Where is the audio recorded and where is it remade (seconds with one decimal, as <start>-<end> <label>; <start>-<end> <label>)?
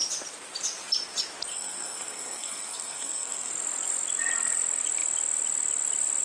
0.0-1.5 recorded; 1.5-3.5 remade; 3.5-6.2 recorded